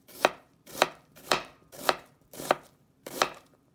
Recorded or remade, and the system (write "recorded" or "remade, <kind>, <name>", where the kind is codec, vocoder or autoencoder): remade, vocoder, BigVGAN v2